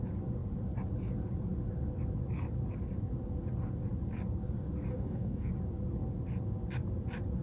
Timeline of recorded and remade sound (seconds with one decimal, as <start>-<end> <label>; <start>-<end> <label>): 0.0-4.9 recorded; 4.9-5.5 remade; 5.5-7.4 recorded